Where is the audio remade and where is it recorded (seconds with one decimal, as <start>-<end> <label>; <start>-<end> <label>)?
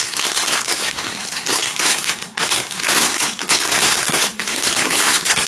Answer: 0.0-5.5 remade